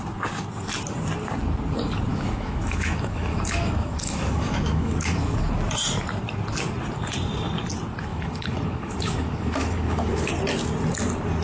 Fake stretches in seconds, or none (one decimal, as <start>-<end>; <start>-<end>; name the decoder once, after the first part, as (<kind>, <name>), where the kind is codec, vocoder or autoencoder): 2.1-5.5 (autoencoder, DAC-VAE); 8.1-10.3